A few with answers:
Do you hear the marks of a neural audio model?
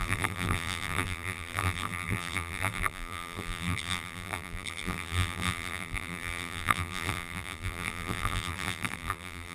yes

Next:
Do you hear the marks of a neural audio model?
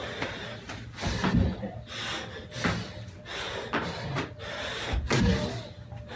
no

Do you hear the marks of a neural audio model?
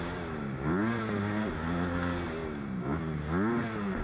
no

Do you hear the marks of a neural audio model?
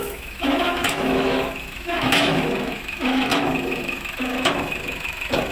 yes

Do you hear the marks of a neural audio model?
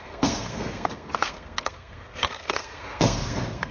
yes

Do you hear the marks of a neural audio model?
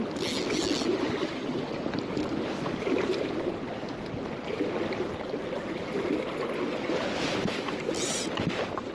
no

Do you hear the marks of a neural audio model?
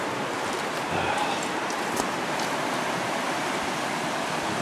no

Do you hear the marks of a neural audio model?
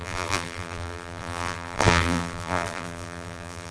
yes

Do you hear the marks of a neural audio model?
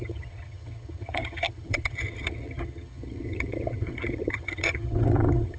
yes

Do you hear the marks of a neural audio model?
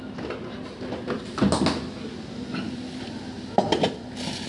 no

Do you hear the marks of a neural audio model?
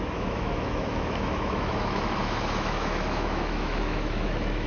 yes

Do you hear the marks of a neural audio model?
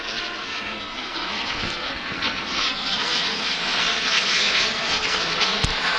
yes